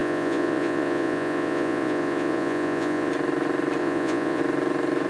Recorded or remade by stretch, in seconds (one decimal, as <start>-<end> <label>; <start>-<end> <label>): 0.0-3.1 remade; 3.1-3.8 recorded; 3.8-4.4 remade; 4.4-5.1 recorded